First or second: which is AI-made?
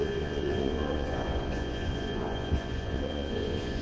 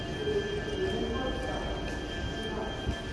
first